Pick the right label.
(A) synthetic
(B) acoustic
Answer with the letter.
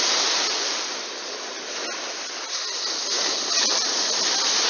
B